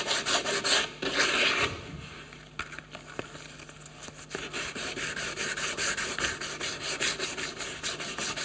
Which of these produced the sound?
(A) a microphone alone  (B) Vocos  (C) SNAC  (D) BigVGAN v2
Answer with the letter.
A